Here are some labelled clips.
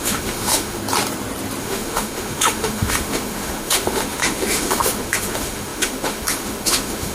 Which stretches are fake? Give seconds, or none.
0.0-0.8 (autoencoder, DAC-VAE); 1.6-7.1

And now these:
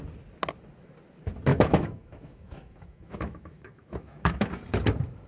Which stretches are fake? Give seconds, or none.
1.5-4.5 (autoencoder, DAC-VAE)

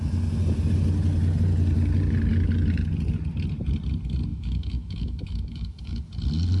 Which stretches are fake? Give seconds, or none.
4.3-6.0 (autoencoder, DAC-VAE)

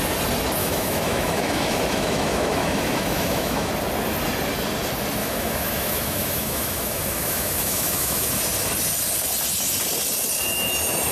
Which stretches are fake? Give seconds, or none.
0.6-3.7 (autoencoder, DAC-VAE); 5.2-8.3